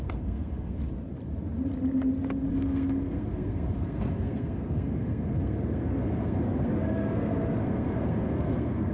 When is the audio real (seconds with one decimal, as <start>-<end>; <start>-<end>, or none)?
0.8-2.5